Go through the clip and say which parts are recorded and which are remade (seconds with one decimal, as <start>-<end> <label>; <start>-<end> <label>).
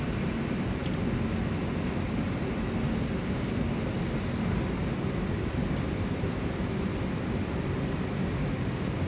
0.0-9.1 recorded